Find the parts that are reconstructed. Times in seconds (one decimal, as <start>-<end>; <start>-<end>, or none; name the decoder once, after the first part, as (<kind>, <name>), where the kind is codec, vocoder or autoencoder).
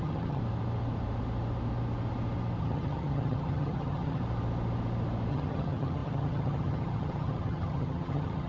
0.0-0.4 (vocoder, HiFi-GAN); 2.6-4.2; 5.3-8.5